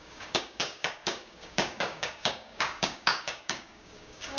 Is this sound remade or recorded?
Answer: remade